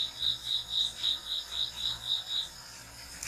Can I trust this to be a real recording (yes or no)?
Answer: yes